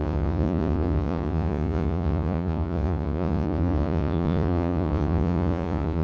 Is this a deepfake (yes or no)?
yes